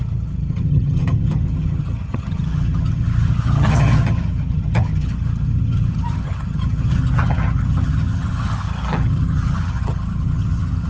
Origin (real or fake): fake